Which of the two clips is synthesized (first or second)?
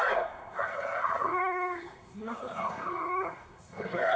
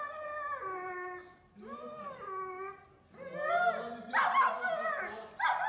first